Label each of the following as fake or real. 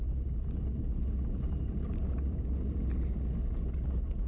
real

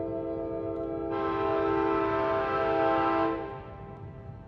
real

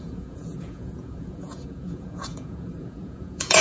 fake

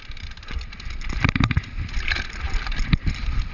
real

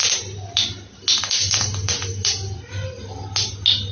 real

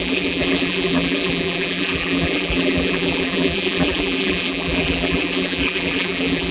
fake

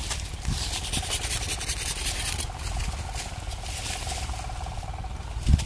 real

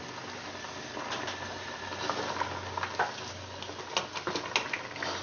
real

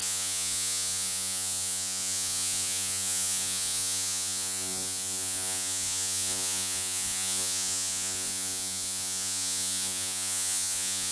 fake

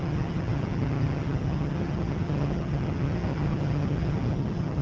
fake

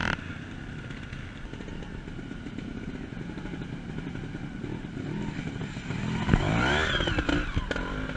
real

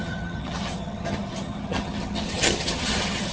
fake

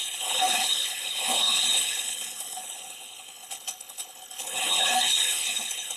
fake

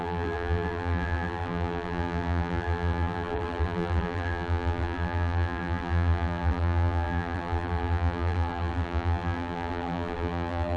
fake